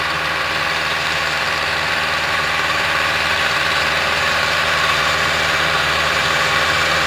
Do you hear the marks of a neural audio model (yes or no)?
yes